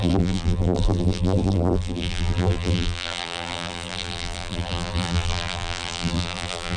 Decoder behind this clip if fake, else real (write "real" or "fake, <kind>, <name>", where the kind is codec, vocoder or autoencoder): fake, vocoder, BigVGAN v2